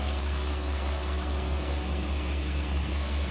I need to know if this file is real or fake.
fake